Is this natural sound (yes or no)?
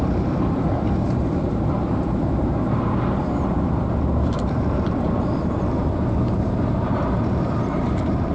no